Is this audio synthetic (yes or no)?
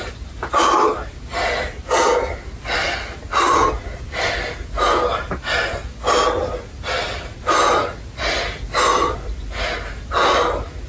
no